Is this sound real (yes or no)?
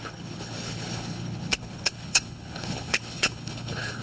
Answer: no